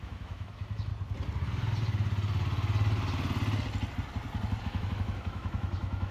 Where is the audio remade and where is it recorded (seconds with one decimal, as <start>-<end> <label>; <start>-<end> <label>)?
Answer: 0.0-0.9 remade; 0.9-4.6 recorded; 4.6-6.1 remade